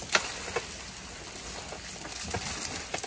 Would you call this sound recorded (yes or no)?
yes